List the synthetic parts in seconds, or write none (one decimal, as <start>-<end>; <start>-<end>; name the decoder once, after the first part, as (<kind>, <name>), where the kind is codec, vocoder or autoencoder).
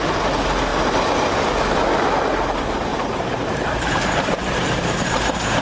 2.9-5.6 (vocoder, BigVGAN v2)